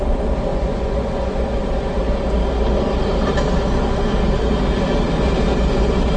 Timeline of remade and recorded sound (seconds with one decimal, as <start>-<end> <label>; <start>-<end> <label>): 0.0-0.5 recorded; 0.5-1.6 remade; 1.6-6.2 recorded